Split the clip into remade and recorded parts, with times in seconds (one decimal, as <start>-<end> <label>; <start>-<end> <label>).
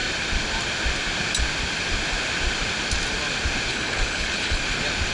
0.0-3.7 recorded; 3.7-4.6 remade; 4.6-5.1 recorded